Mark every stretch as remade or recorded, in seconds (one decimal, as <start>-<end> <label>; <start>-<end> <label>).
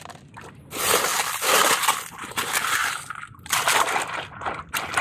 0.0-2.8 recorded; 2.8-5.0 remade